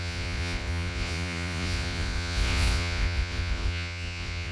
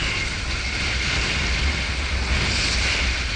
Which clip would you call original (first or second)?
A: second